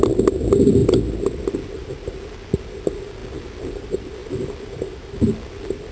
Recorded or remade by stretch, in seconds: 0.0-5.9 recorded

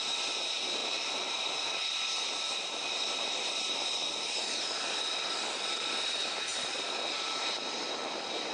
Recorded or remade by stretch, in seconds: 0.0-8.5 remade

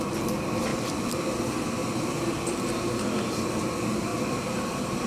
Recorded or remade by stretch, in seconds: 0.0-0.7 recorded; 0.7-1.2 remade; 1.2-1.8 recorded; 1.8-2.6 remade; 2.6-4.1 recorded; 4.1-5.1 remade

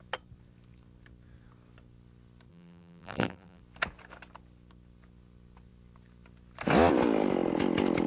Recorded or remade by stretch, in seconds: 0.0-2.5 recorded; 2.5-3.6 remade; 3.6-8.1 recorded

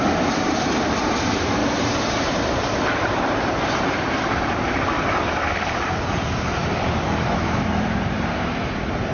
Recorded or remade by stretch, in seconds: 0.0-9.1 remade

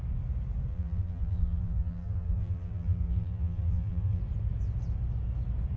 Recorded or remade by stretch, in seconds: 0.0-0.7 recorded; 0.7-4.2 remade; 4.2-5.8 recorded

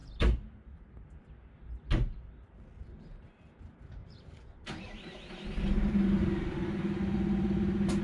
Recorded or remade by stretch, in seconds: 0.0-1.7 remade; 1.7-4.0 recorded; 4.0-5.6 remade; 5.6-8.0 recorded